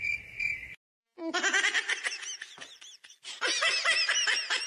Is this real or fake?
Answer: real